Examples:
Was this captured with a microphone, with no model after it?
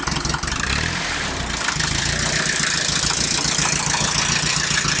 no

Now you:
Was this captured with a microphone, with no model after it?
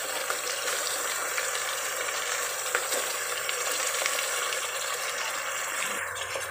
yes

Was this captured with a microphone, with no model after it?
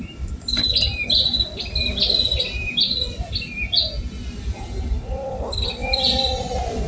yes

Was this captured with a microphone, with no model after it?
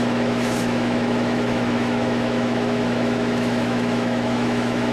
no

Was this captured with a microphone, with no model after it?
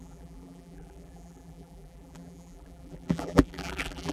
no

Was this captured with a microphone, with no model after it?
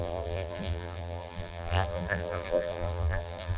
no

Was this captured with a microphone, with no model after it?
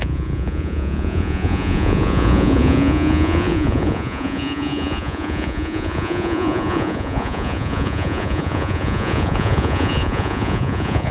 no